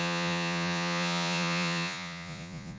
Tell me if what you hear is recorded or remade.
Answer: remade